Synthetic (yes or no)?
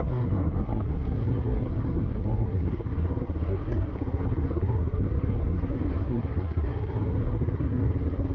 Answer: yes